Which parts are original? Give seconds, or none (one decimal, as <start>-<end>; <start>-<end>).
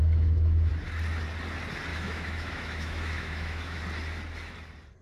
0.7-1.9; 3.8-5.0